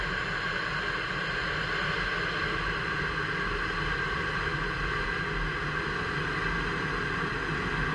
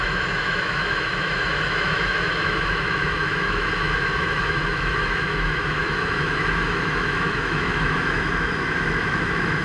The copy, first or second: second